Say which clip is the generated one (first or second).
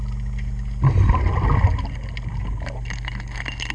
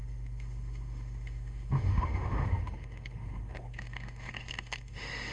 second